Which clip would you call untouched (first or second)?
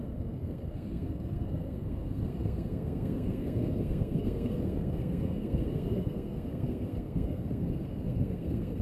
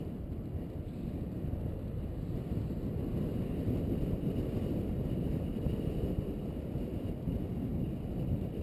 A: second